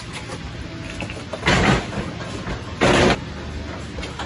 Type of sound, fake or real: real